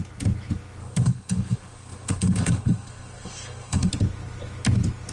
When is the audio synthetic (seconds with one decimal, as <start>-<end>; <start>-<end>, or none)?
0.8-3.9